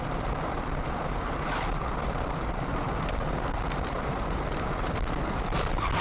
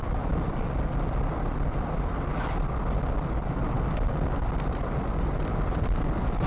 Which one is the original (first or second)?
second